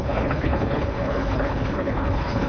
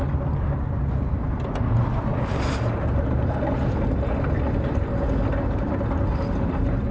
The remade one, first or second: first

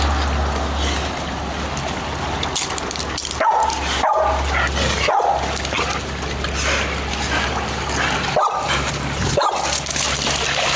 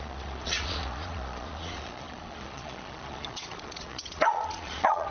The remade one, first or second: second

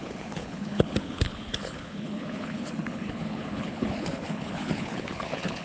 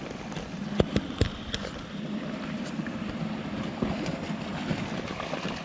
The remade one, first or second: first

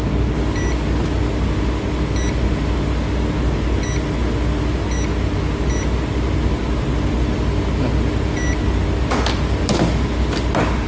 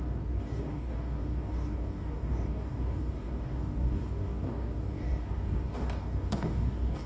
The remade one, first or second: second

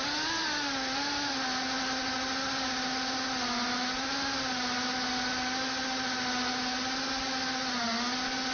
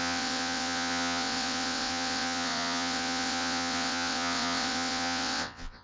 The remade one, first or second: second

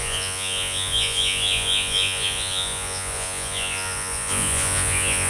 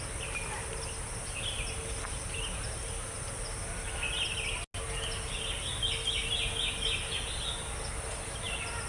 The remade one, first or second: first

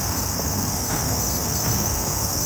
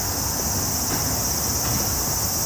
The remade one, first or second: first